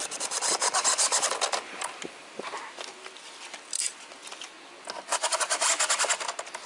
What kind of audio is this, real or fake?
real